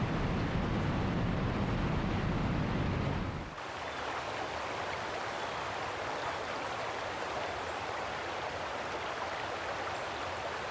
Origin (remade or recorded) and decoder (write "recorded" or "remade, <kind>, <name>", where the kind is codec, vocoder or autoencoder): recorded